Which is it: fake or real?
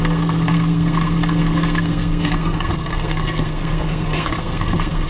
fake